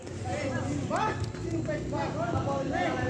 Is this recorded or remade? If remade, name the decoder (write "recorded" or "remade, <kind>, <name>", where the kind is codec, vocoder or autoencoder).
recorded